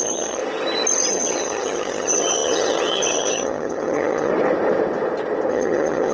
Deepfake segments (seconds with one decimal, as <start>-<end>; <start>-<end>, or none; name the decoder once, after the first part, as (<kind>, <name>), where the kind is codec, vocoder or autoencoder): 0.0-0.4 (vocoder, HiFi-GAN); 1.1-4.3; 5.5-6.1